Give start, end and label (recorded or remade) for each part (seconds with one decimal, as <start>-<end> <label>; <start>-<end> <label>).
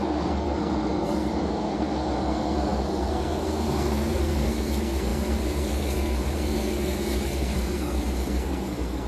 0.0-9.1 remade